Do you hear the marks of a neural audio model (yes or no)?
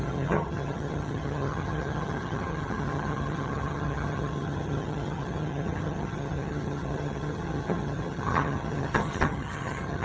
yes